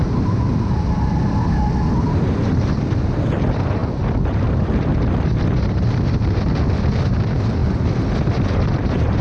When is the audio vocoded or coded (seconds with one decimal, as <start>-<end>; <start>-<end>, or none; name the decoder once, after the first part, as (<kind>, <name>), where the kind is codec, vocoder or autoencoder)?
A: 7.6-9.2 (vocoder, BigVGAN v2)